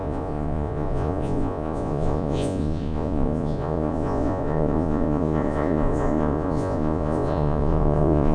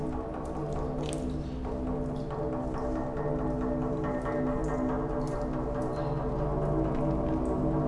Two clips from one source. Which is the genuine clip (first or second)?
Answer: second